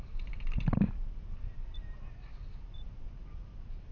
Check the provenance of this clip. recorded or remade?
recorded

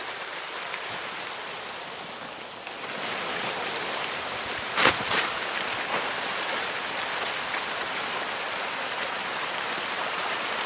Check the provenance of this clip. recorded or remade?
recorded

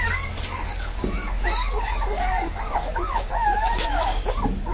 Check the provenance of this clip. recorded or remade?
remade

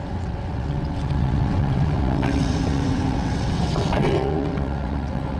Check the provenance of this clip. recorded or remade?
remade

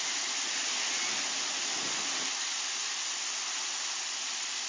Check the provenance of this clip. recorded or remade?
recorded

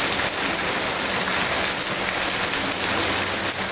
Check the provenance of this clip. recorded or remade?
recorded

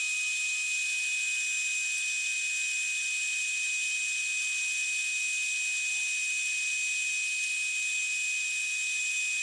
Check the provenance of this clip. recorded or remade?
recorded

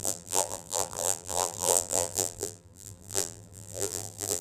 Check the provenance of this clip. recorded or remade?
remade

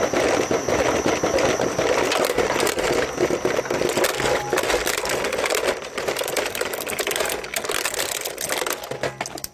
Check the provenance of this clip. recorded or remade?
recorded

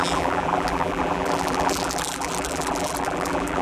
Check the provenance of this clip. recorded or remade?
remade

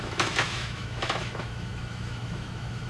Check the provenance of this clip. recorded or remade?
remade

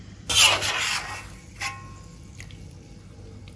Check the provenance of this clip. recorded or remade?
recorded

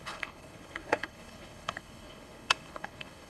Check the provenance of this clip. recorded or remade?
remade